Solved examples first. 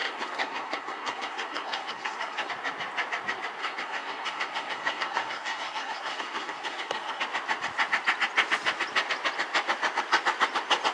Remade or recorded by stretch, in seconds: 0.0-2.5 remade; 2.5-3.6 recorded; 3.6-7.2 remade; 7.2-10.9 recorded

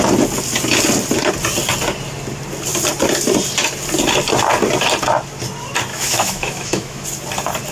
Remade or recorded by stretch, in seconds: 0.0-5.9 recorded; 5.9-7.0 remade; 7.0-7.7 recorded

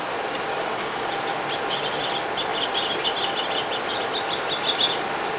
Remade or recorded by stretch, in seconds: 0.0-0.5 recorded; 0.5-1.1 remade; 1.1-5.4 recorded